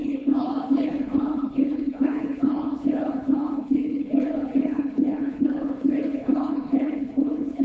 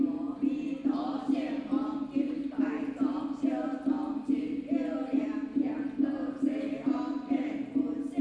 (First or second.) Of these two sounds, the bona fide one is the second